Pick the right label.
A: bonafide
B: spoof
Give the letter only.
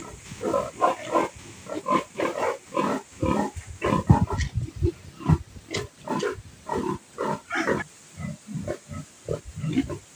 A